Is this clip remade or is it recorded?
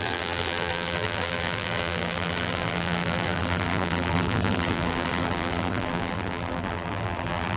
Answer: remade